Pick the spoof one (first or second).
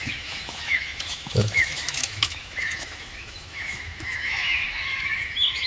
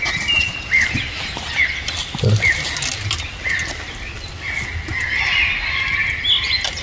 first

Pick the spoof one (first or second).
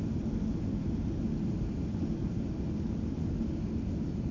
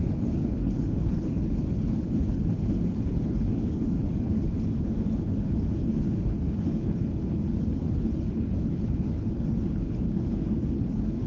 second